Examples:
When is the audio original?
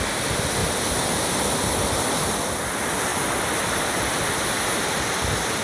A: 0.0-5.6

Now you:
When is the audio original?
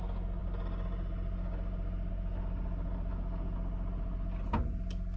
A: 0.0-5.2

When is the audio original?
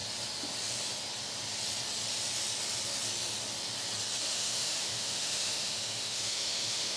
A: 0.0-4.2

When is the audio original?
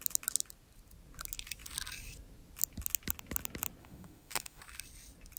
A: 0.0-3.8; 4.6-5.4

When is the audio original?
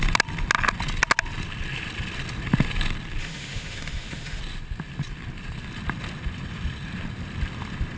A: 0.0-3.2; 4.4-8.0